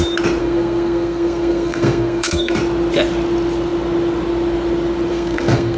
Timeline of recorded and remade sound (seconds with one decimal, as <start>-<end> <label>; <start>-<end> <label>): 0.0-0.4 recorded; 0.4-2.6 remade; 2.6-5.1 recorded; 5.1-5.8 remade